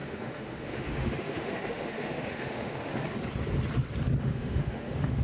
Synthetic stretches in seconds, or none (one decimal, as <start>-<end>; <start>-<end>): 0.0-2.9; 4.2-5.2